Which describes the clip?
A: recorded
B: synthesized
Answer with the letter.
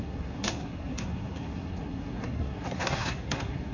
B